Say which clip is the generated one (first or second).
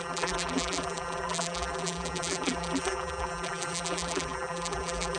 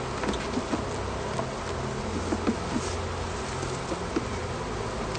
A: first